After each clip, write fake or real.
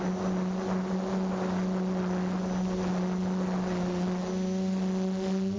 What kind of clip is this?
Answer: real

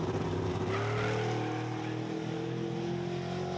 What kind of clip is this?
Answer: real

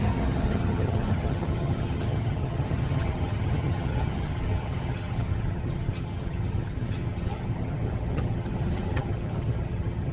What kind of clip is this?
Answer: fake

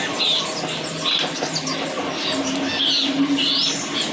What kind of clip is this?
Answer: real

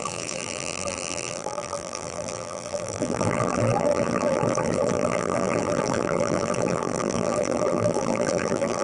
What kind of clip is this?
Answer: fake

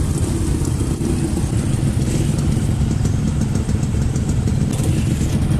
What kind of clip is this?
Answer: real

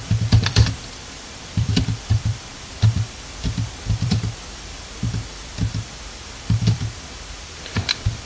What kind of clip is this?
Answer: fake